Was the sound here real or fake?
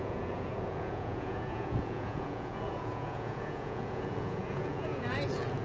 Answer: fake